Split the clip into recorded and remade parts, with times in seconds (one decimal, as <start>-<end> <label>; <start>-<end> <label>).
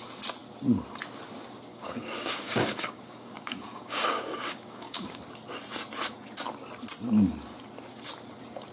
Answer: 0.0-1.7 recorded; 1.7-5.2 remade; 5.2-8.7 recorded